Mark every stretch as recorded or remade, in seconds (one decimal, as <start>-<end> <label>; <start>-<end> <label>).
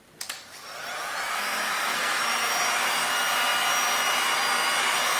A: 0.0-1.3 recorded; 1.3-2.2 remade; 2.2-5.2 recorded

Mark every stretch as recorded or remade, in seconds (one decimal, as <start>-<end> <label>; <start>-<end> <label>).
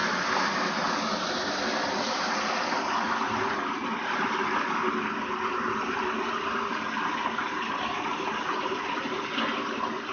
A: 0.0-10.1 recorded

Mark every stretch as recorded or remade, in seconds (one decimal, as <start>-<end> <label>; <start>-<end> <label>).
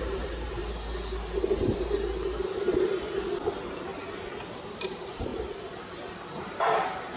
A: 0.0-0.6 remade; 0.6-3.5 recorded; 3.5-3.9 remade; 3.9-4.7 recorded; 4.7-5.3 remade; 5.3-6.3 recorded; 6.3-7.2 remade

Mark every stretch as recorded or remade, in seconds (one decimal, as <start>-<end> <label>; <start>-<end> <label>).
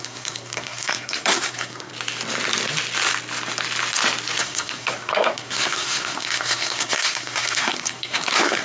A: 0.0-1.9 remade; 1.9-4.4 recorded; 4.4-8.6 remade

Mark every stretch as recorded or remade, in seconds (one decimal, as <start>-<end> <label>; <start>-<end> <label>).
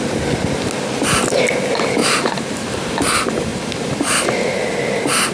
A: 0.0-2.0 recorded; 2.0-2.9 remade; 2.9-5.3 recorded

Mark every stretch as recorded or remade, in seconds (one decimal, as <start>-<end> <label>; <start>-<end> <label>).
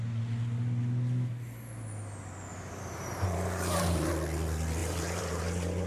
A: 0.0-2.5 recorded; 2.5-4.1 remade; 4.1-4.8 recorded; 4.8-5.4 remade; 5.4-5.9 recorded